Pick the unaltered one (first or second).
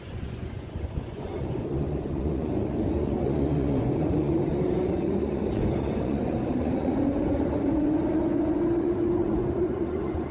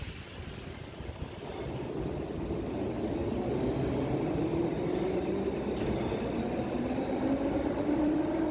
second